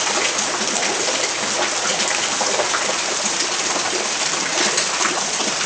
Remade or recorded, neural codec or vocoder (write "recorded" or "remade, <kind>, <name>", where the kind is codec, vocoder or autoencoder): recorded